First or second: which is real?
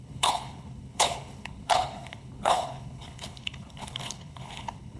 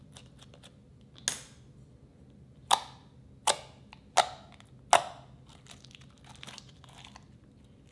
second